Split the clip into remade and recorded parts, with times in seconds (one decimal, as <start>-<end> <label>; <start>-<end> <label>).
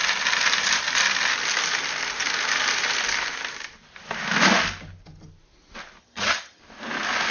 0.0-6.0 recorded; 6.0-6.6 remade; 6.6-7.3 recorded